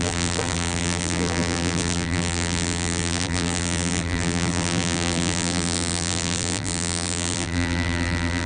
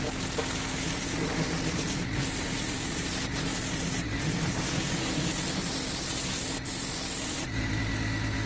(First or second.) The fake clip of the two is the first